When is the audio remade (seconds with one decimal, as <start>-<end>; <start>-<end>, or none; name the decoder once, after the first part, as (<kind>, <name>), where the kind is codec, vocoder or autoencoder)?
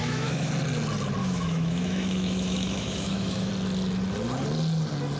0.0-0.5 (autoencoder, DAC-VAE); 1.2-3.5